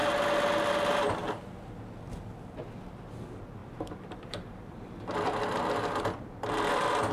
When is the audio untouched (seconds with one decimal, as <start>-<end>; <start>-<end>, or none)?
0.0-3.6; 4.8-7.1